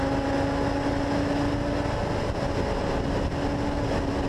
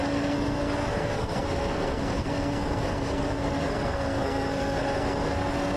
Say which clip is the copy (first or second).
second